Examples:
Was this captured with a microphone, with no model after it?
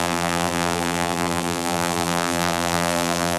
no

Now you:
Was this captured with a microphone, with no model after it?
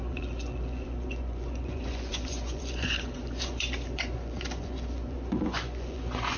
no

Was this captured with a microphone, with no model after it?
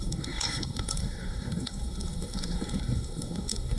no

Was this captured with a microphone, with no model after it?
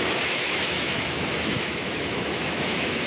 no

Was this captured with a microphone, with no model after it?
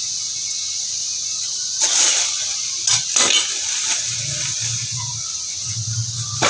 yes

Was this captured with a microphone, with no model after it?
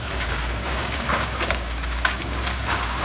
no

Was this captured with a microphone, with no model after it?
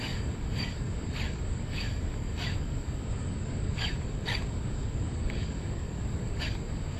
no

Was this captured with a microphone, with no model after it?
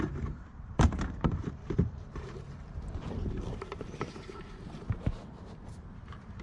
no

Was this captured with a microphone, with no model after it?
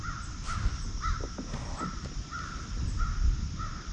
yes